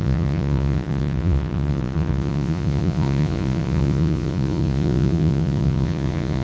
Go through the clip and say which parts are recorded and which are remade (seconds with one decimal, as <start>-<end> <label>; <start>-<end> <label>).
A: 0.0-6.4 remade